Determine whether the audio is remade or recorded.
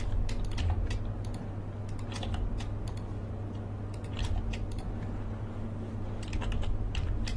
recorded